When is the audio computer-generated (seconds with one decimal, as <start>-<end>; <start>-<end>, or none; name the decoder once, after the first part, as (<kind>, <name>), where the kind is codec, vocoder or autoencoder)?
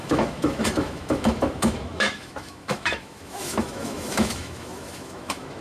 0.0-5.6 (autoencoder, DAC-VAE)